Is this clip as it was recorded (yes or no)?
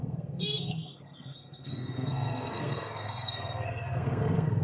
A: no